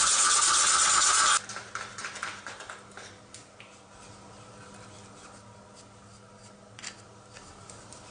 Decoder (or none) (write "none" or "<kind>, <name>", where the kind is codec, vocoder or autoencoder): none